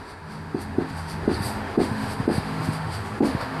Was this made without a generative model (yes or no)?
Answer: no